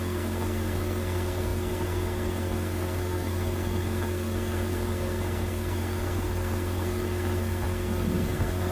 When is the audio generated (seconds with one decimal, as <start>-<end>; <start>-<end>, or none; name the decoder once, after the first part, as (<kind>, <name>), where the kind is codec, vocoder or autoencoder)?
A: 0.0-8.7 (codec, SNAC)